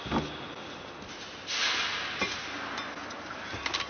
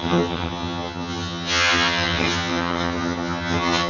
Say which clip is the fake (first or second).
second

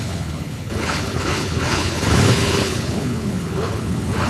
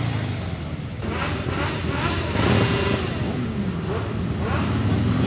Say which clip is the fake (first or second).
first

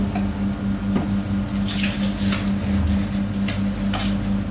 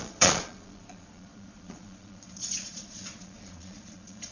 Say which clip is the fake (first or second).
second